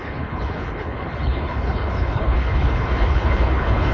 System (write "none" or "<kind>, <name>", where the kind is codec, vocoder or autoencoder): codec, HILCodec